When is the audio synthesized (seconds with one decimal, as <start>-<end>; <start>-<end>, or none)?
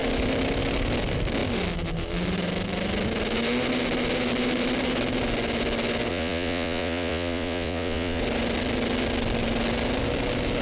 6.1-8.2